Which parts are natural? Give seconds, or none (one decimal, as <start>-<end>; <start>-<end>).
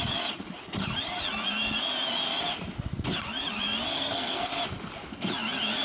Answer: 0.0-3.9; 4.5-5.8